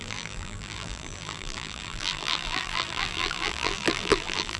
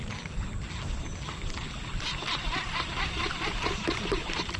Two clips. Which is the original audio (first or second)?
second